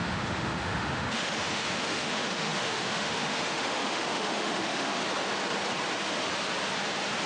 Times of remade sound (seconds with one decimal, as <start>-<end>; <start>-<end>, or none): 0.0-5.0